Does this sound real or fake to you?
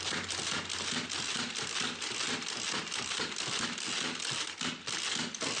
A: real